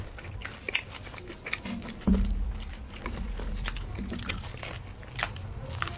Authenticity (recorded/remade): recorded